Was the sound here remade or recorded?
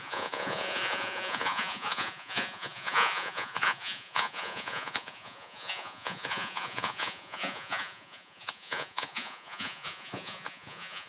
remade